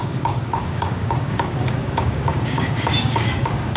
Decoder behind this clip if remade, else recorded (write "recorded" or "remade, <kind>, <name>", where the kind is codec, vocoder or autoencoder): remade, codec, DAC